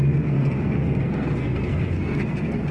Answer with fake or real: fake